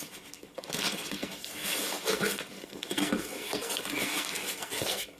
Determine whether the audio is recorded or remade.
remade